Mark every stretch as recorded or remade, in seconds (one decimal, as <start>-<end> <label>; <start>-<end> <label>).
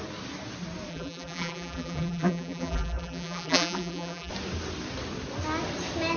0.0-0.9 recorded; 0.9-4.3 remade; 4.3-6.2 recorded